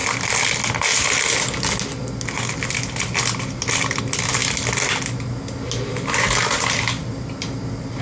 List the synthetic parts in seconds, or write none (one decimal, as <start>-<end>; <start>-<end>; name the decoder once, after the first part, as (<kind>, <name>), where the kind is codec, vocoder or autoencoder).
none